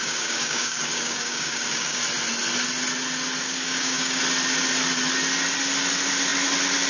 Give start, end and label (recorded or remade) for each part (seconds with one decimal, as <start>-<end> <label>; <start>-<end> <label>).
0.0-2.0 remade; 2.0-3.4 recorded; 3.4-4.2 remade; 4.2-6.9 recorded